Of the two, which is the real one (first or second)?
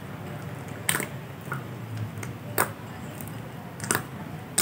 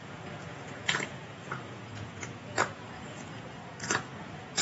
first